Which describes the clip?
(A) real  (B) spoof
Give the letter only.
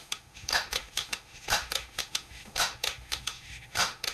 B